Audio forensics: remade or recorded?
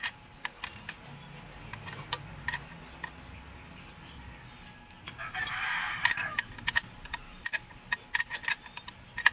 recorded